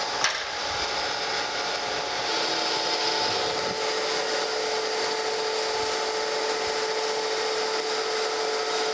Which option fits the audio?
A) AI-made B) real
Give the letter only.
B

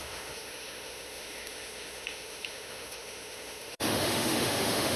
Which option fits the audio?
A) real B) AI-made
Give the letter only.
B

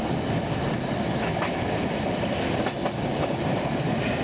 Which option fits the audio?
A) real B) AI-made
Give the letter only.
A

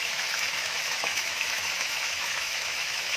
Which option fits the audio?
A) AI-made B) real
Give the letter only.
A